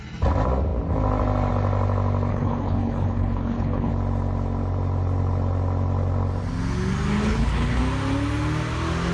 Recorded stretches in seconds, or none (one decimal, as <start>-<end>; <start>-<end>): 0.0-2.3; 3.9-7.2; 7.8-9.1